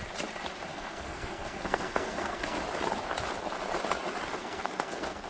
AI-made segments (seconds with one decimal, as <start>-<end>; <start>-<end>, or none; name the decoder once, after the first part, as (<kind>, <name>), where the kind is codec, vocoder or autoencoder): 0.7-2.6 (codec, SNAC); 4.4-5.3